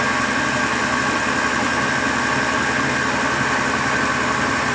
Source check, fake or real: real